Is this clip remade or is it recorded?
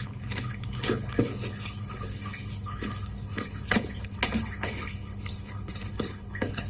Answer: remade